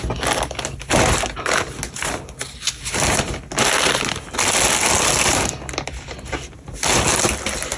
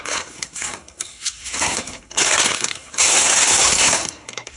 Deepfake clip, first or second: second